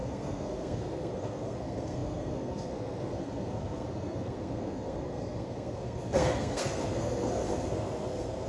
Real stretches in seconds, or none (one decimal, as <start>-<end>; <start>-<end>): none